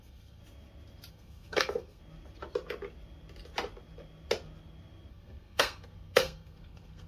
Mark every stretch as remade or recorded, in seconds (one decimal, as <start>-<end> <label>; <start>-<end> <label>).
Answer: 0.0-0.4 remade; 0.4-1.1 recorded; 1.1-2.0 remade; 2.0-5.1 recorded; 5.1-7.1 remade